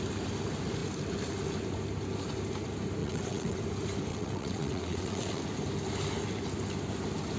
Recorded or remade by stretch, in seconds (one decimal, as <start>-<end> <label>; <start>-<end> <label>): 0.0-3.0 recorded; 3.0-3.6 remade; 3.6-4.1 recorded; 4.1-5.4 remade; 5.4-7.4 recorded